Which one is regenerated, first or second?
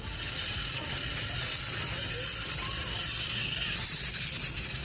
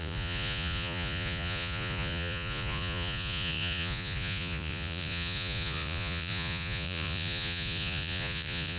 second